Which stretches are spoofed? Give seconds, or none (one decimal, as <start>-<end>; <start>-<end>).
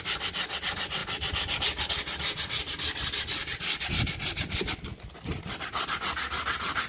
none